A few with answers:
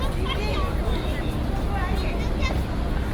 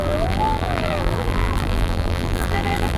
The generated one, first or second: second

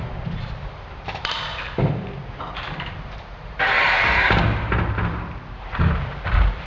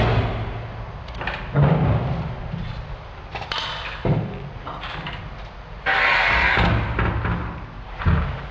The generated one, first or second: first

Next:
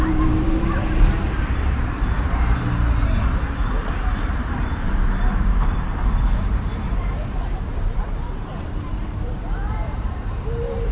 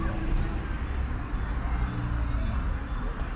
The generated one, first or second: first